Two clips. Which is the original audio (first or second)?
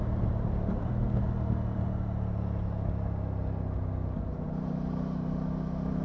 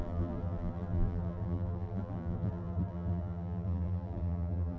first